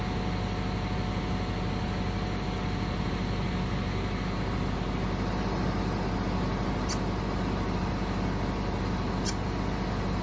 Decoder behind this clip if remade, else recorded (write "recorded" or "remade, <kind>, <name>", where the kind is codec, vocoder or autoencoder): recorded